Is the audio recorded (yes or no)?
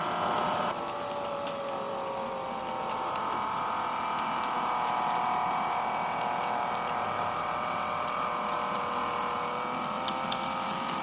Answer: yes